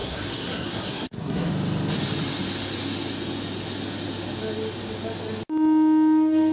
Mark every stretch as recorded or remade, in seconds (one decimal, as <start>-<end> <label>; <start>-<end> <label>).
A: 0.0-1.5 remade; 1.5-6.5 recorded